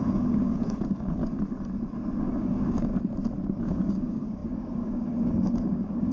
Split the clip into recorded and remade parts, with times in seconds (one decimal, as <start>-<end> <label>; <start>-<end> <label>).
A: 0.0-1.2 remade; 1.2-2.2 recorded; 2.2-2.9 remade; 2.9-3.6 recorded; 3.6-6.1 remade